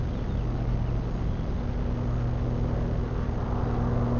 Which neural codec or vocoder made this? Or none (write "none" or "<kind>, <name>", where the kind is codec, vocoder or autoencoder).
none